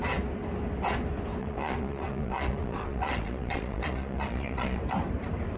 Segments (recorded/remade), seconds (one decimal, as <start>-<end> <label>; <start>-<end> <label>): 0.0-1.4 recorded; 1.4-4.8 remade; 4.8-5.6 recorded